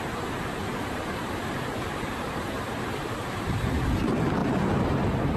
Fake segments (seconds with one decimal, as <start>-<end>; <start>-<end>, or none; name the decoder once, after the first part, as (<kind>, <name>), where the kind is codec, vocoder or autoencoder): 0.6-3.8 (vocoder, BigVGAN v2)